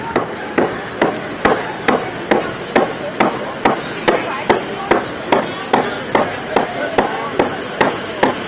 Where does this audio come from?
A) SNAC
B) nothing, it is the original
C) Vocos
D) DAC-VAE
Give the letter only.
B